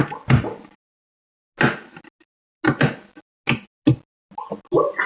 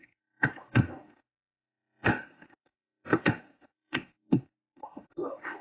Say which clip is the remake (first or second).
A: second